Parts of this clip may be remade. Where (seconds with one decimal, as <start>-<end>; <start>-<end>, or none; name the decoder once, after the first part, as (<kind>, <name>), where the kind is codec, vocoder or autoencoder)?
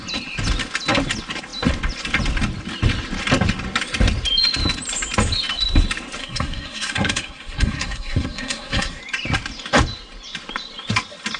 6.2-9.0 (codec, SNAC)